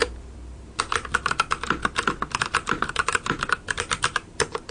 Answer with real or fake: fake